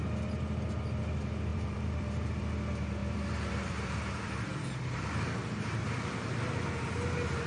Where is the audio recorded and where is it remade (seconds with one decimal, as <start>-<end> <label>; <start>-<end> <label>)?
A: 0.0-1.5 recorded; 1.5-2.4 remade; 2.4-3.0 recorded; 3.0-6.4 remade; 6.4-7.5 recorded